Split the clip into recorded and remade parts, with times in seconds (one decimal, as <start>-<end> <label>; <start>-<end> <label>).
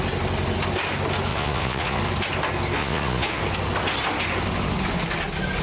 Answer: 0.0-1.3 recorded; 1.3-2.0 remade; 2.0-2.8 recorded; 2.8-3.4 remade; 3.4-5.6 recorded